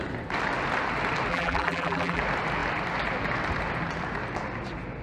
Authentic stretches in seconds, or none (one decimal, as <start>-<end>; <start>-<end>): 0.0-1.3; 2.2-5.0